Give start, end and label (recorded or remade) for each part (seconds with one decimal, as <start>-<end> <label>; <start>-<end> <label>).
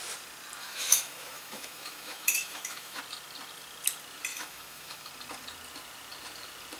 0.0-0.6 recorded; 0.6-3.0 remade; 3.0-4.3 recorded; 4.3-5.1 remade; 5.1-6.8 recorded